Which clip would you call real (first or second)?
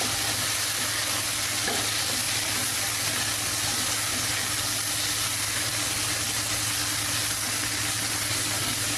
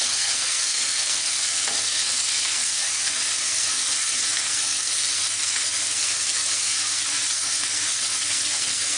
first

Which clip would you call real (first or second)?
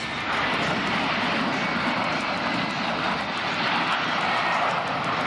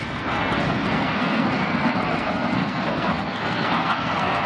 first